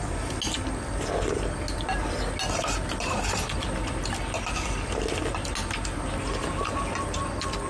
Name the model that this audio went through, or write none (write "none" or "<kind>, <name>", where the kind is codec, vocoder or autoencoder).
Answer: none